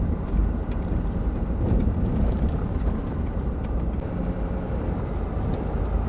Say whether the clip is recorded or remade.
remade